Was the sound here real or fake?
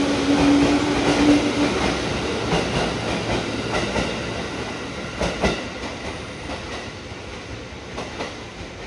real